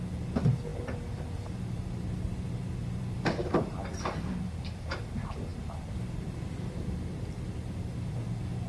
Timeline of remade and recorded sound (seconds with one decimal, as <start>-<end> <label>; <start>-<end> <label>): 0.0-8.7 recorded

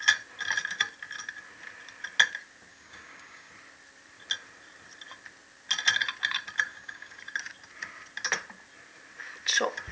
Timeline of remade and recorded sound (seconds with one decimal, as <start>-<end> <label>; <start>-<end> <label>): 0.0-2.7 recorded; 2.7-3.5 remade; 3.5-6.7 recorded; 6.7-7.2 remade; 7.2-9.9 recorded

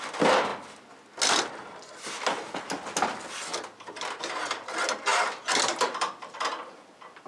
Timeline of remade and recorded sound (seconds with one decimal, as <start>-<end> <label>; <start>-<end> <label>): 0.0-5.1 recorded; 5.1-6.4 remade; 6.4-7.3 recorded

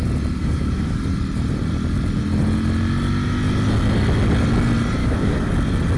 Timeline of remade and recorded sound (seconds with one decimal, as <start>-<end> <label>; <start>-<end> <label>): 0.0-0.4 recorded; 0.4-1.0 remade; 1.0-5.0 recorded; 5.0-5.5 remade; 5.5-6.0 recorded

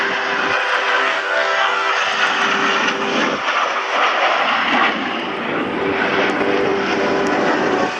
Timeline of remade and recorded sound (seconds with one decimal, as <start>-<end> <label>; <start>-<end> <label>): 0.0-1.0 recorded; 1.0-1.9 remade; 1.9-8.0 recorded

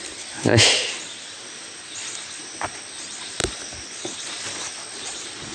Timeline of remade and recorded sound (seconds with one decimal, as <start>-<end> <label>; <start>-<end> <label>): 0.0-5.5 recorded

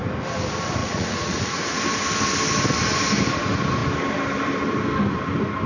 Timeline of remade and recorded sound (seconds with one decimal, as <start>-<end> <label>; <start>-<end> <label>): 0.0-0.8 recorded; 0.8-1.8 remade; 1.8-5.7 recorded